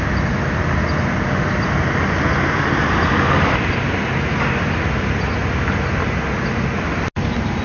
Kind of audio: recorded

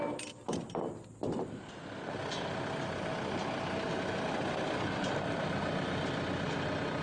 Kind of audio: recorded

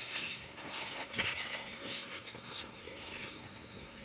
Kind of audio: remade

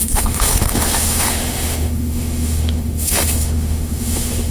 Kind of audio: remade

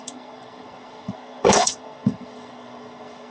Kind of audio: remade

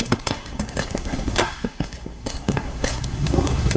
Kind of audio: remade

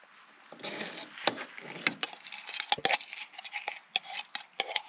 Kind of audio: recorded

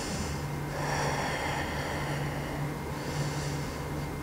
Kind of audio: recorded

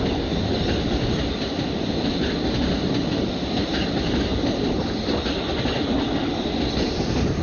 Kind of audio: recorded